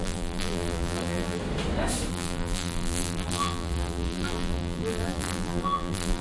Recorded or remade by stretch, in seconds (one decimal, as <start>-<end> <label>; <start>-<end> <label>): 0.0-1.4 remade; 1.4-2.1 recorded; 2.1-6.2 remade